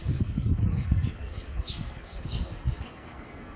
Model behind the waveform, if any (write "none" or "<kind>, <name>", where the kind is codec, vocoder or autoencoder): codec, SNAC